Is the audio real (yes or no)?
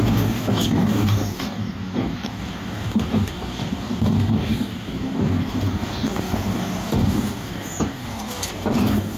no